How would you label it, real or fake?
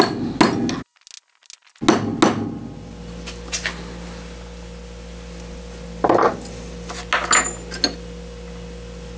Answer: real